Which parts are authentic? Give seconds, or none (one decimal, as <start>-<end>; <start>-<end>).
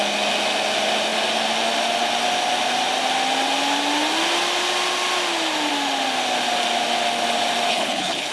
0.0-7.7